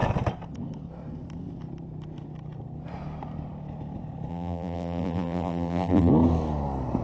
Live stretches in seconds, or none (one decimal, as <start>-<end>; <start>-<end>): 0.0-4.3; 6.1-7.0